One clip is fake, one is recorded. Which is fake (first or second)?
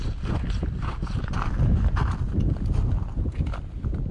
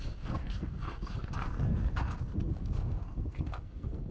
second